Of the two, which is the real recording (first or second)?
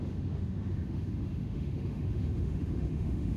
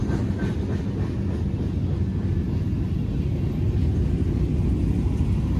second